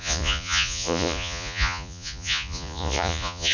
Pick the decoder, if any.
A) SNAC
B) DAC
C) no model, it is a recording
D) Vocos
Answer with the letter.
D